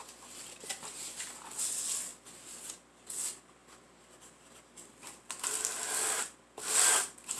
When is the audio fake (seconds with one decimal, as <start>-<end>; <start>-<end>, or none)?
none